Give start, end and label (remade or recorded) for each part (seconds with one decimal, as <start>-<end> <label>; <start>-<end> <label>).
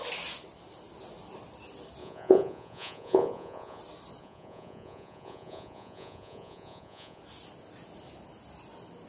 0.0-2.0 recorded; 2.0-3.8 remade; 3.8-4.2 recorded; 4.2-7.2 remade; 7.2-9.1 recorded